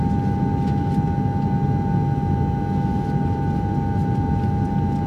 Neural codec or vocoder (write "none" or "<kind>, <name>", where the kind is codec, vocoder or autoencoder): none